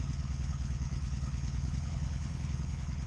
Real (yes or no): no